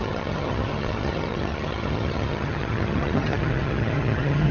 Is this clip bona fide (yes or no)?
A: no